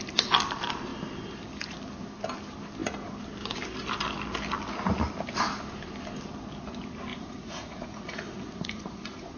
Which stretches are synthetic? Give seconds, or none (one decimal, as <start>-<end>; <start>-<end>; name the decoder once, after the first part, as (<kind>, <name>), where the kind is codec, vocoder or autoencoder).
7.1-9.4 (vocoder, Vocos)

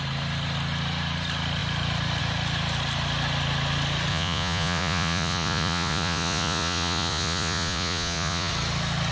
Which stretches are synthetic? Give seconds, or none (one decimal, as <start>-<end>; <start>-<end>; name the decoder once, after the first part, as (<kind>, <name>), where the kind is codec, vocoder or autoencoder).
4.1-8.5 (vocoder, Vocos)

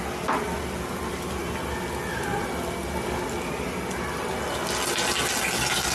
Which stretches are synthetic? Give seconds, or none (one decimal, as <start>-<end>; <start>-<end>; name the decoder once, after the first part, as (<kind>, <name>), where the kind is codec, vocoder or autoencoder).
none